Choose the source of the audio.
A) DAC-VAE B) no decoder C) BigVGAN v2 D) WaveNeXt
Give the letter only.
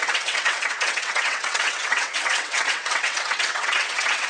D